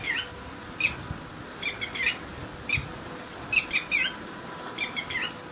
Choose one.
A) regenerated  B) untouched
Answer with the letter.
B